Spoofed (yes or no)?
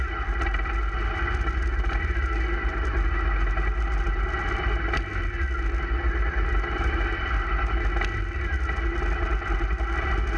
no